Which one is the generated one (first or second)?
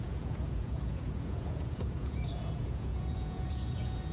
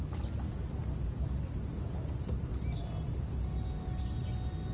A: first